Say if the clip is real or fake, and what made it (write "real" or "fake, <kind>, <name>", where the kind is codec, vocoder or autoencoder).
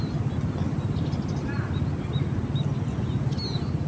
real